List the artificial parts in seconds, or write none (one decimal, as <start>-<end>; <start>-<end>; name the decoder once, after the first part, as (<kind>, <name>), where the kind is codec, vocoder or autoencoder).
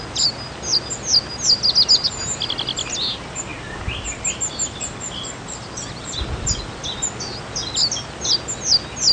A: none